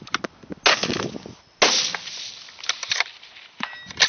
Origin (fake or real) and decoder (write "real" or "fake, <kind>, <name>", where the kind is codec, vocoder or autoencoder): real